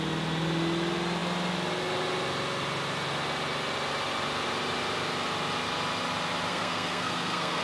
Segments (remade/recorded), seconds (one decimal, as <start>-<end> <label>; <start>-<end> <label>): 0.0-6.5 recorded; 6.5-7.6 remade